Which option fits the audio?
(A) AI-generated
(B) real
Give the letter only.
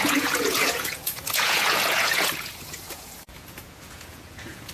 A